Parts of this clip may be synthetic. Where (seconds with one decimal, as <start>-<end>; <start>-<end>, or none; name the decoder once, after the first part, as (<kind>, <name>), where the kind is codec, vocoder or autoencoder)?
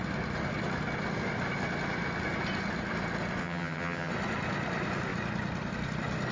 3.4-4.1 (vocoder, HiFi-GAN)